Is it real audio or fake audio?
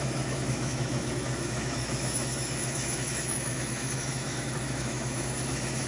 fake